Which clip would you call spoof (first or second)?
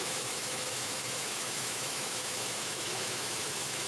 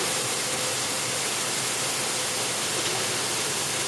first